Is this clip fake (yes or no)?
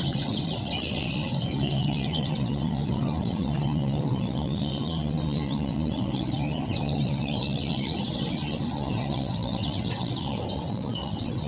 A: yes